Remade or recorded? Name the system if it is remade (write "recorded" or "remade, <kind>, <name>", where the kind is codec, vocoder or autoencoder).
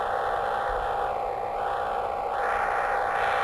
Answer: recorded